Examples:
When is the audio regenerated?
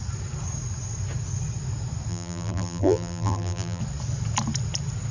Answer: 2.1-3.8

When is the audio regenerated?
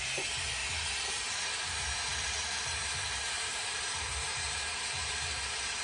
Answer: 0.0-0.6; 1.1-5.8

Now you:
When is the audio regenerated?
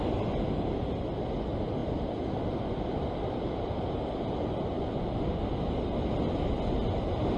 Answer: none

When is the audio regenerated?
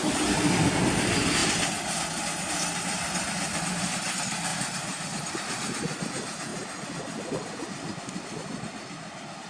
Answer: none